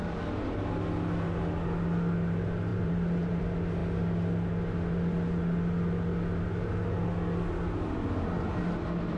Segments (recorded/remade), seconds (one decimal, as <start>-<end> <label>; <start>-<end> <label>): 0.0-2.7 recorded; 2.7-3.4 remade; 3.4-9.2 recorded